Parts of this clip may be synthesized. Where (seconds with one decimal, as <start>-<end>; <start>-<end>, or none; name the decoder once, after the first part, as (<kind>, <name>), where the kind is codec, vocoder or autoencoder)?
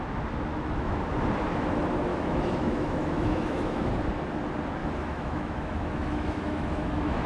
0.5-1.0 (autoencoder, DAC-VAE); 2.1-3.9; 4.8-7.3